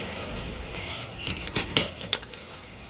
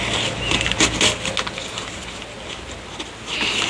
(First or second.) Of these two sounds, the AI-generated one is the first